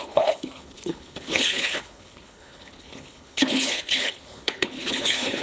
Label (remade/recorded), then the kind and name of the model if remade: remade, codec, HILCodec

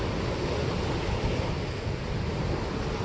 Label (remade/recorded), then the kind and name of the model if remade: recorded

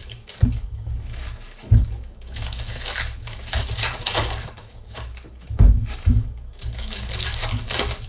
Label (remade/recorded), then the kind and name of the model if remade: remade, codec, DAC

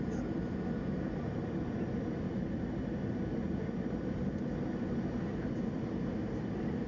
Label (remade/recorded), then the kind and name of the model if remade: recorded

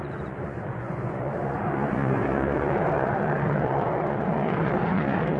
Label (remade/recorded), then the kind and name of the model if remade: remade, vocoder, Vocos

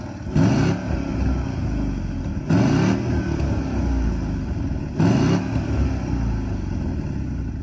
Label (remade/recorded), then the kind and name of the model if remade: recorded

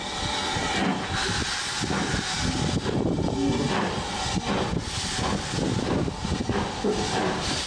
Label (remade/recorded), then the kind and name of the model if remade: recorded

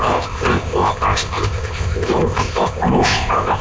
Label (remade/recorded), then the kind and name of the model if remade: remade, codec, ZipCodec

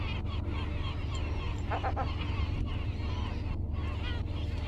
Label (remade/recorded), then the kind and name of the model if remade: recorded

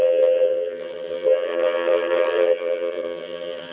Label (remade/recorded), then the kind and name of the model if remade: remade, vocoder, HiFi-GAN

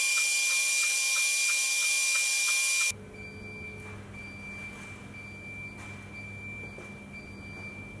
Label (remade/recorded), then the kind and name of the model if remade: recorded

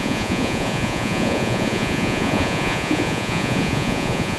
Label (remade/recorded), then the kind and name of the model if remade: remade, vocoder, Vocos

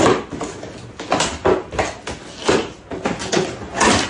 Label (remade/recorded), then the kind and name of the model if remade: recorded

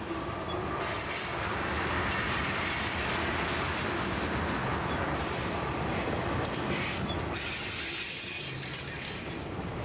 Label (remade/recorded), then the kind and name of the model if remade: recorded